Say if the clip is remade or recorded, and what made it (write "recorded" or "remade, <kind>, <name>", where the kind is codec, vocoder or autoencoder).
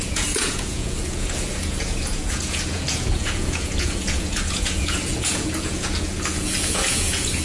remade, vocoder, Vocos